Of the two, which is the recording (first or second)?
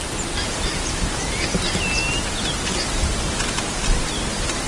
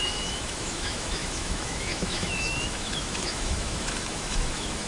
first